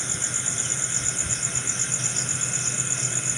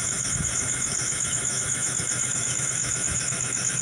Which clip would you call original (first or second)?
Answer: first